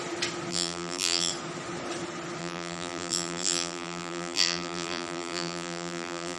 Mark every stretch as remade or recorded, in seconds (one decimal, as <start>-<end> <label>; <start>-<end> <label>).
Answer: 0.0-0.5 recorded; 0.5-1.3 remade; 1.3-2.4 recorded; 2.4-6.4 remade